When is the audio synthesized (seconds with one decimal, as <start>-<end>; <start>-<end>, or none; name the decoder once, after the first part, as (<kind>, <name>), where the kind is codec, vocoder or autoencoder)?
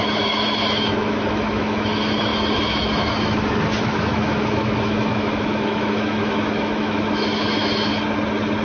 0.0-7.9 (autoencoder, DAC-VAE)